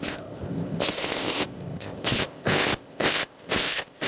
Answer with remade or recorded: remade